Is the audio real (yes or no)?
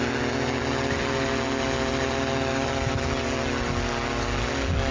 yes